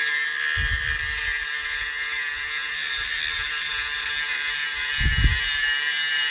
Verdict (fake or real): fake